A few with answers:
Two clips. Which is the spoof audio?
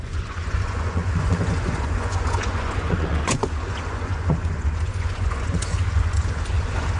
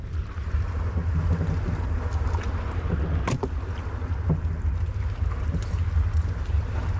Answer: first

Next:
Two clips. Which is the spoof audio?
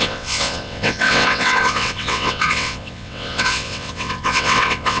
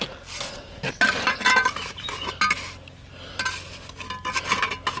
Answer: first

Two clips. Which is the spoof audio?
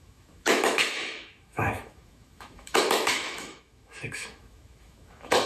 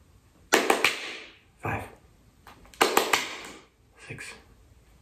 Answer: first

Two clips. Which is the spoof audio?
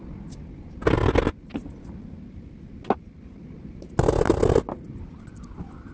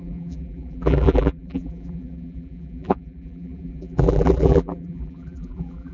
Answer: second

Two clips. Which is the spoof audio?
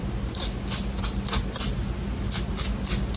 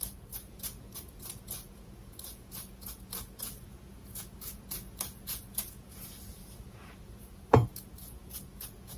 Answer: second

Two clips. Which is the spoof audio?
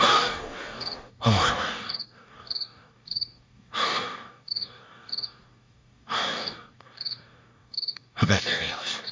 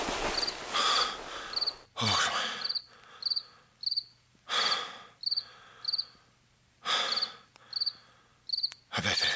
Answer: first